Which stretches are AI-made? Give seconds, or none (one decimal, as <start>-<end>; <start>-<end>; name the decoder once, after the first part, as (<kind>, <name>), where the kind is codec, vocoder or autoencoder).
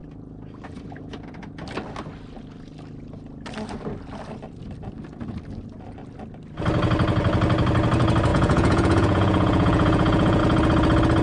8.3-10.4 (vocoder, Vocos)